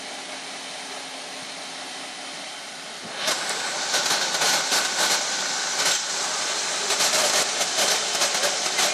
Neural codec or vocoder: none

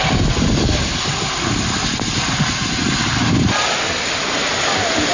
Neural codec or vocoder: none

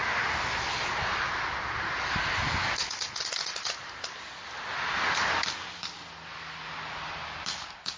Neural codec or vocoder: none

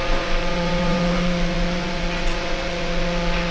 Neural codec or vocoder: vocoder, Vocos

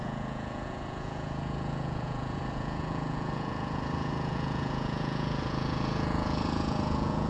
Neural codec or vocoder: vocoder, Vocos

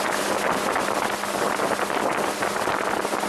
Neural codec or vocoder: none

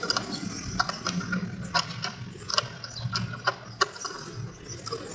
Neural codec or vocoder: none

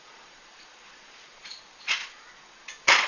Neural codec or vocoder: vocoder, Vocos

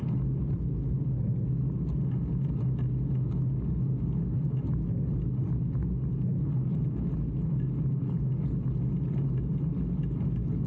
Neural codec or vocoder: none